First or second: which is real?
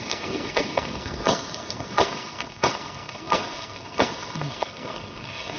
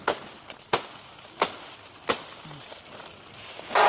second